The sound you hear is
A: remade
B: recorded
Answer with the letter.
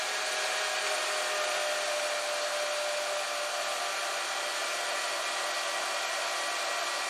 B